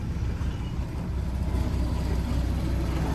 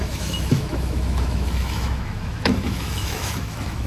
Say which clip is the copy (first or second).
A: second